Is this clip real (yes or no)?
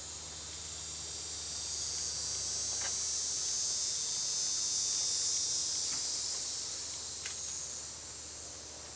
yes